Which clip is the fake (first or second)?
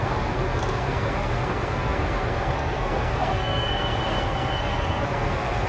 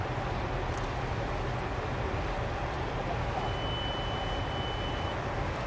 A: first